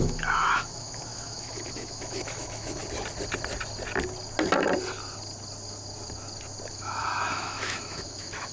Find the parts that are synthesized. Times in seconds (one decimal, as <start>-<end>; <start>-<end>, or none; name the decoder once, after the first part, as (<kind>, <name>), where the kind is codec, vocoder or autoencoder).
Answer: 0.0-2.8 (autoencoder, DAC-VAE); 6.7-8.5